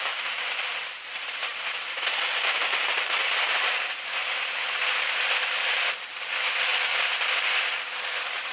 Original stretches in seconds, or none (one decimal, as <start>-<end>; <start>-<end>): 1.5-2.6; 4.2-6.0; 6.7-8.5